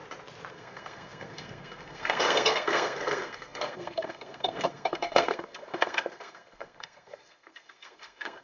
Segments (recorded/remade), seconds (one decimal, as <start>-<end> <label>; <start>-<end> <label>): 0.0-0.5 recorded; 0.5-8.4 remade

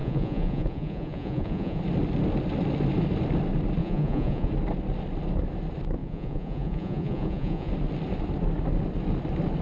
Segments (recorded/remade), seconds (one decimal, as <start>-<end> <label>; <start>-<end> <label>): 0.0-1.8 remade; 1.8-3.8 recorded; 3.8-4.5 remade; 4.5-6.0 recorded; 6.0-7.7 remade; 7.7-9.6 recorded

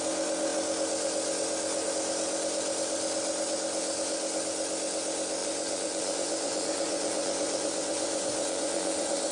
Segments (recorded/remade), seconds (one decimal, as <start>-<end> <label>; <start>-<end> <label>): 0.0-5.4 recorded; 5.4-9.3 remade

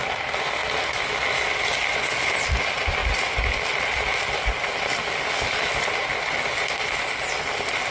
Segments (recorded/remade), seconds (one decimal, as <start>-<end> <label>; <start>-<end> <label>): 0.0-7.9 recorded

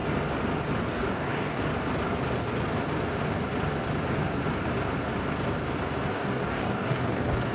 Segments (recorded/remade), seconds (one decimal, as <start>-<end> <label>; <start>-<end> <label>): 0.0-0.8 recorded; 0.8-1.6 remade; 1.6-6.1 recorded; 6.1-7.5 remade